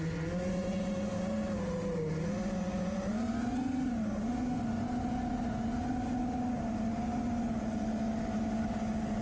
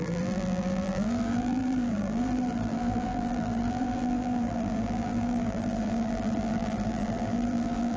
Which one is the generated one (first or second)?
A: second